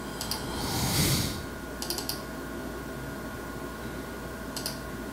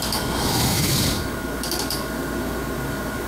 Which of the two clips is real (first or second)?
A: first